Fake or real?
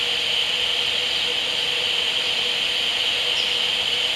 real